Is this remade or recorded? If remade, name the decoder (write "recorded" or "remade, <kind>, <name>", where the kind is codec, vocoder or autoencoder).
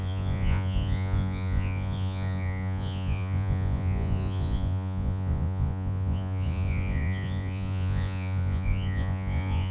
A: remade, vocoder, Vocos